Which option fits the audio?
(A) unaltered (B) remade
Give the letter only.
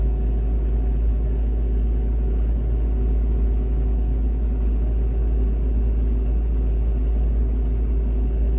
A